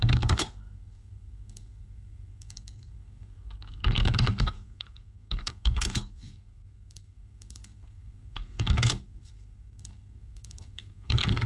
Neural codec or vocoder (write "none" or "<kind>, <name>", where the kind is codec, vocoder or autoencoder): codec, SNAC